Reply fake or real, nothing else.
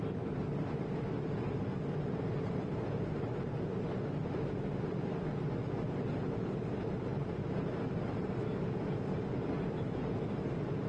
real